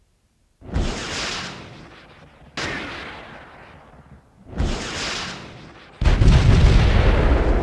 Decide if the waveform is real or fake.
real